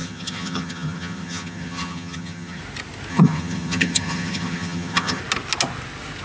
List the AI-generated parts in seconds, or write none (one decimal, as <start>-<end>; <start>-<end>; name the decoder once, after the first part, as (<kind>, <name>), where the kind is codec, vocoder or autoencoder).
0.0-2.6 (vocoder, HiFi-GAN); 3.1-5.2